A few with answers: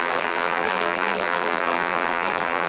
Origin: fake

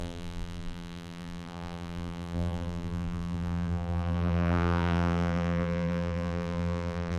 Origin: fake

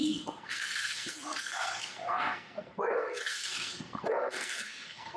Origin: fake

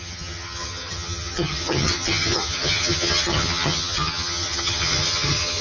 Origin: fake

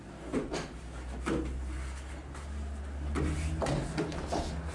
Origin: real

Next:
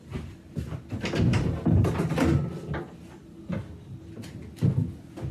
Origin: real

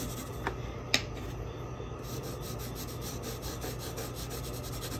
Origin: real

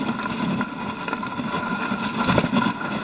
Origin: real